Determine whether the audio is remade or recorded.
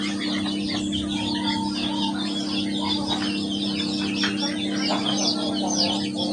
recorded